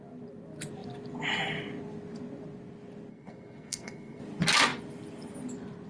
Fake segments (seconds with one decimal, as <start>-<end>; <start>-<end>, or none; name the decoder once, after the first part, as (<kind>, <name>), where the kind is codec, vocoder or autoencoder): 3.1-4.2 (codec, SNAC)